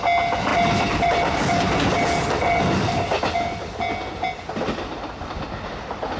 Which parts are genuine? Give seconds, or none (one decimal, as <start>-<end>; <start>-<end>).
0.0-6.2